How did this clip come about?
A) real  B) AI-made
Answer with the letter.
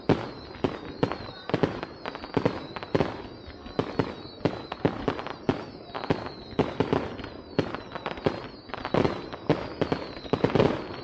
A